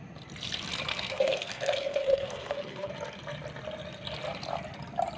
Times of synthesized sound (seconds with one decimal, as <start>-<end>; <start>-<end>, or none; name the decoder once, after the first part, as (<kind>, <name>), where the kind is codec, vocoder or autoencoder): 0.9-2.9 (codec, SNAC)